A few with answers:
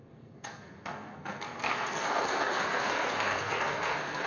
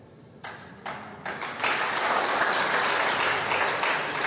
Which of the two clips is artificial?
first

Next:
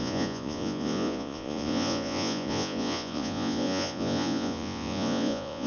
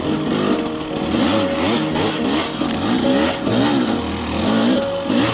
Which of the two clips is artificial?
first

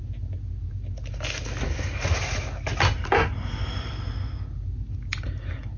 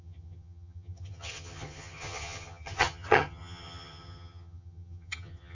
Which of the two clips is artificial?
second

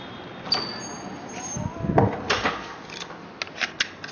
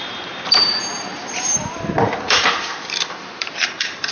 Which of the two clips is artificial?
second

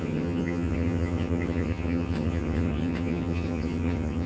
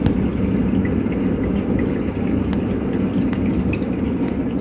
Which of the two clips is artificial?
first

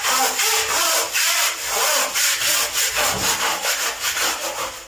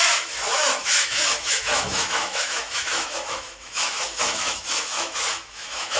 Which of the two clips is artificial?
second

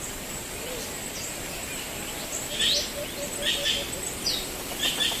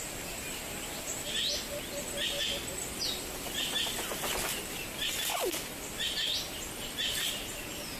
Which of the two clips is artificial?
first